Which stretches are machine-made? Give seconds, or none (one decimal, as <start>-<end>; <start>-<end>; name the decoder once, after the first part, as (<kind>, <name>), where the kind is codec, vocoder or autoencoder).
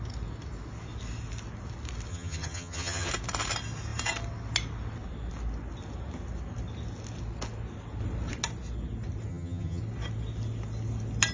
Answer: 2.1-3.1 (vocoder, HiFi-GAN); 9.3-9.8